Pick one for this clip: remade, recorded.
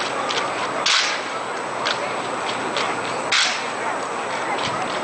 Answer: recorded